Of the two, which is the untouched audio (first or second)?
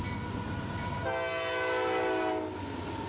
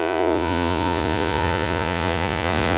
first